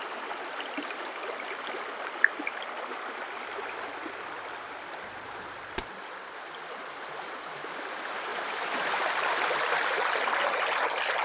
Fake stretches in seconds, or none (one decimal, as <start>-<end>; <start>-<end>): none